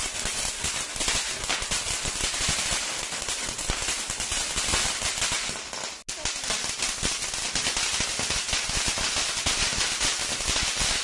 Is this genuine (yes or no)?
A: yes